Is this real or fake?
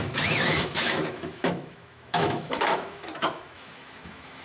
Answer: fake